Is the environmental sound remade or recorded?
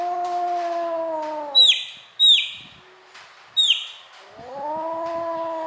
recorded